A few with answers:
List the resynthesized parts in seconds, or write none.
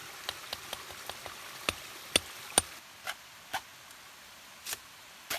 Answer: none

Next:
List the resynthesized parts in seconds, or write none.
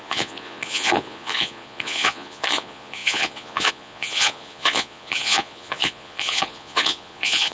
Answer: 0.0-7.5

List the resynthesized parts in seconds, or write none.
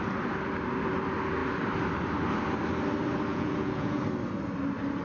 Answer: 3.3-4.0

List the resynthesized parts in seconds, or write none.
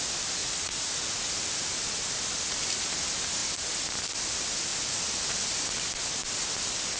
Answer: 0.4-1.3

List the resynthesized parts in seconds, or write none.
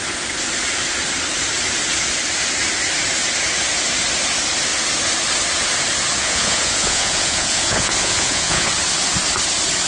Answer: 6.2-8.7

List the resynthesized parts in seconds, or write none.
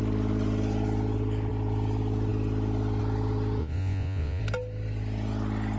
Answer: 3.6-4.4